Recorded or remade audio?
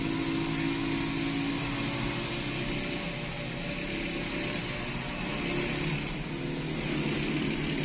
recorded